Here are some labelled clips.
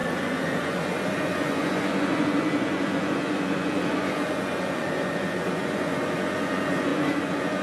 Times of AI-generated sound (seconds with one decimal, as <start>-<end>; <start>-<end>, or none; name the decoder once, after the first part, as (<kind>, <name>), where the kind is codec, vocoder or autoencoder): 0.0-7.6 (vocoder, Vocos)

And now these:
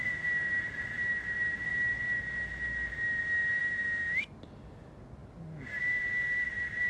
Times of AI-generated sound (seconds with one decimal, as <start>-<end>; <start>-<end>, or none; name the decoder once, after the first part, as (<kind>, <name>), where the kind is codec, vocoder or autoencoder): none

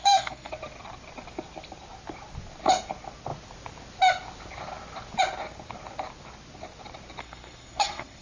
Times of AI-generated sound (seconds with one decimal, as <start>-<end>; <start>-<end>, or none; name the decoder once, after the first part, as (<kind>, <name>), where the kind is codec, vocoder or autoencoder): 0.0-0.5 (codec, SNAC); 7.2-8.2